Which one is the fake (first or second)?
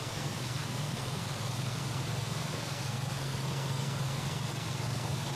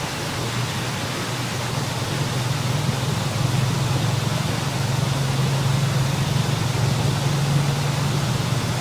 first